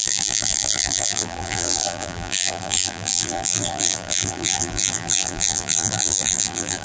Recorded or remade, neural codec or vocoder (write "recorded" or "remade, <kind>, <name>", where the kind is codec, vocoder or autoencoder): remade, vocoder, BigVGAN v2